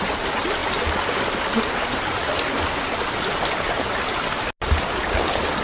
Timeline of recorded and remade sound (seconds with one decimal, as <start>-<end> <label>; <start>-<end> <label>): 0.0-5.6 recorded